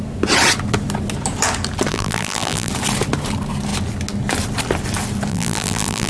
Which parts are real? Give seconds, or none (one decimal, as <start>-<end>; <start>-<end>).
0.0-1.9; 2.7-5.3